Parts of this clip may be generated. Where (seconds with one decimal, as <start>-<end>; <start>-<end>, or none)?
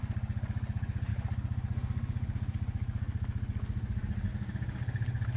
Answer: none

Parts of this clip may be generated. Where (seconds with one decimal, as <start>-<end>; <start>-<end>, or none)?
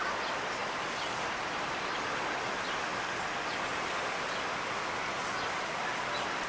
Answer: none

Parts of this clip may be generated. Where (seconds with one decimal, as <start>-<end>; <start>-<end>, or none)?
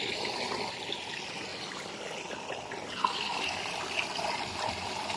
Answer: none